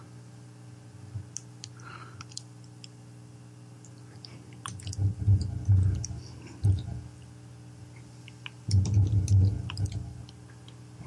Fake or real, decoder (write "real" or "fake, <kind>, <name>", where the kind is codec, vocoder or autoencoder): real